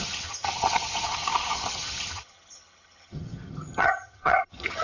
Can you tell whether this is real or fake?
fake